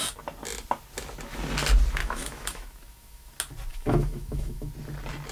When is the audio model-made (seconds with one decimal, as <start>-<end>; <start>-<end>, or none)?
2.0-3.3; 3.7-4.7